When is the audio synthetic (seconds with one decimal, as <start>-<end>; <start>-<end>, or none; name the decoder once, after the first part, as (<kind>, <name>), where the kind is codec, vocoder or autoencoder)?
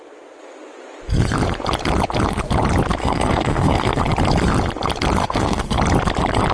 3.0-4.0 (codec, SNAC); 5.2-5.8